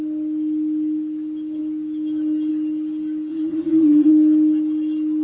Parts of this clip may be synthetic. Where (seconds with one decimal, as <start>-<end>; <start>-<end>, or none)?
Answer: 3.3-4.1